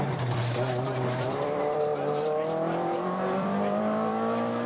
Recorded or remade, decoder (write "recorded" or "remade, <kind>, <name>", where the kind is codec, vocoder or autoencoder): remade, vocoder, BigVGAN v2